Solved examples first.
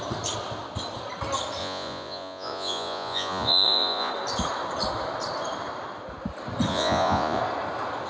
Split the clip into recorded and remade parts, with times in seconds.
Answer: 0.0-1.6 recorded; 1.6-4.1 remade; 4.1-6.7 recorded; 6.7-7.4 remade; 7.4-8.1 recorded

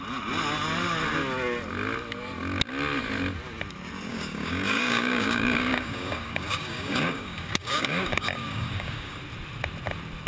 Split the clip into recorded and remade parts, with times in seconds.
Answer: 0.0-4.1 recorded; 4.1-9.2 remade; 9.2-10.3 recorded

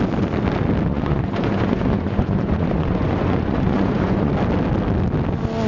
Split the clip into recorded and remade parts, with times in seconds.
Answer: 0.0-0.9 recorded; 0.9-4.3 remade; 4.3-5.7 recorded

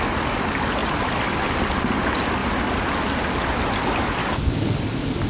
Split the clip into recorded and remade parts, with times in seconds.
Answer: 0.0-4.2 recorded; 4.2-4.8 remade; 4.8-5.3 recorded

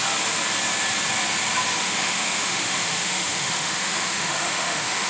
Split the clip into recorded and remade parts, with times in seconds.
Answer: 0.0-1.8 recorded; 1.8-5.1 remade

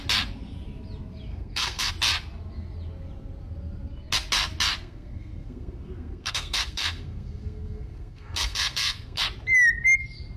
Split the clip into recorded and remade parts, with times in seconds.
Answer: 0.0-1.3 recorded; 1.3-1.9 remade; 1.9-4.8 recorded; 4.8-9.2 remade; 9.2-10.4 recorded

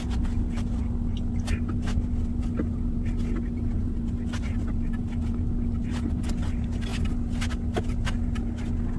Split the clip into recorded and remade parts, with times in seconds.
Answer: 0.0-9.0 recorded